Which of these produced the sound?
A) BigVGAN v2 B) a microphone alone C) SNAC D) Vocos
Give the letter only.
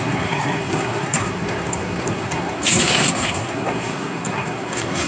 C